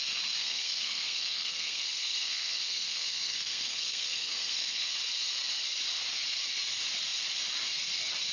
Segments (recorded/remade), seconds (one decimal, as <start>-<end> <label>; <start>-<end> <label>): 0.0-0.4 recorded; 0.4-4.9 remade; 4.9-8.3 recorded